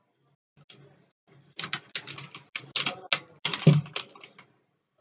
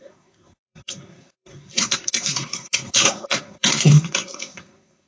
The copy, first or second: second